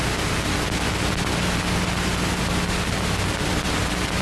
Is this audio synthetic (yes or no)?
no